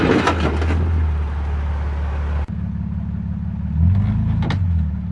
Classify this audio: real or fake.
real